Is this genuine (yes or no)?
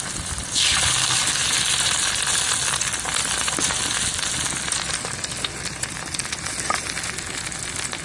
yes